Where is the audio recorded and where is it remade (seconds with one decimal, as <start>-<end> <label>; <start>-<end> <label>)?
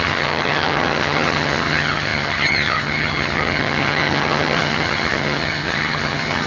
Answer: 0.0-6.5 remade